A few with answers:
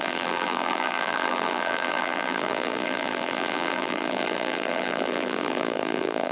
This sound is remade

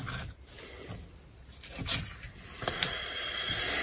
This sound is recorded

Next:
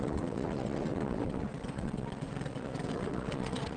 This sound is remade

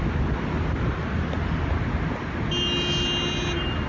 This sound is recorded